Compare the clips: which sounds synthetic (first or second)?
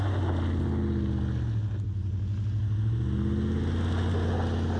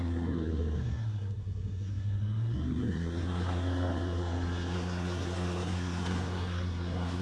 second